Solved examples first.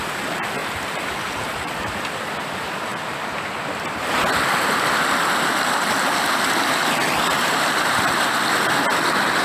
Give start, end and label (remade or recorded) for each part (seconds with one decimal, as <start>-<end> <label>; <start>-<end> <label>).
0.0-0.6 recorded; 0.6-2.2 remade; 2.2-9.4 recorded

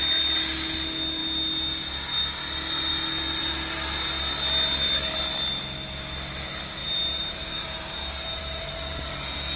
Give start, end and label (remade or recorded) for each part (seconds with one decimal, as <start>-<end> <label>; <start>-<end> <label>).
0.0-6.8 recorded; 6.8-9.6 remade

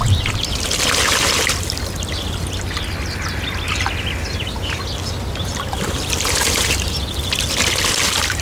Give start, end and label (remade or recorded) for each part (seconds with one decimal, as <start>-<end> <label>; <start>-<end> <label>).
0.0-4.2 recorded; 4.2-4.8 remade; 4.8-8.4 recorded